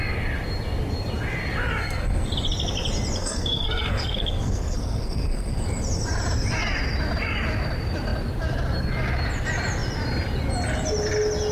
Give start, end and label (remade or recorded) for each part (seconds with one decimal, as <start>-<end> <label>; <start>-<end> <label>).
0.0-1.8 recorded; 1.8-2.3 remade; 2.3-3.2 recorded; 3.2-5.6 remade; 5.6-11.5 recorded